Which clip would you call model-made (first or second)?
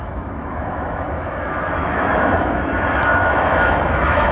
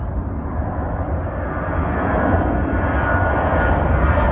first